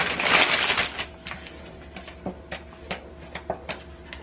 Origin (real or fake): real